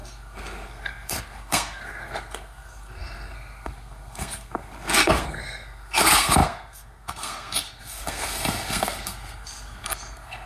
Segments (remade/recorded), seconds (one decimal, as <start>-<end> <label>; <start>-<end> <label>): 0.0-10.5 remade